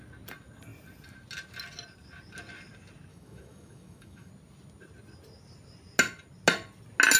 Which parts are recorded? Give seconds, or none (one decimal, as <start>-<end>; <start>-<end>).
0.0-3.1; 4.3-7.2